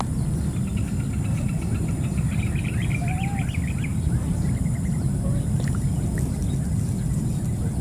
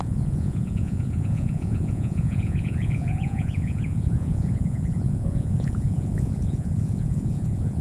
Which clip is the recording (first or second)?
first